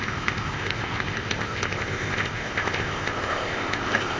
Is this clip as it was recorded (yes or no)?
no